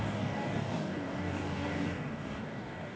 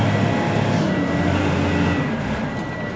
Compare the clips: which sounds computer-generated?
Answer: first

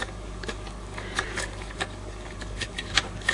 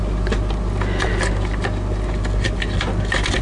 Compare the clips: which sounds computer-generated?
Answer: first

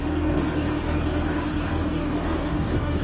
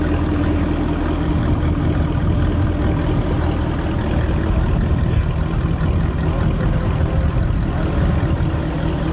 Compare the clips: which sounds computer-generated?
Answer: first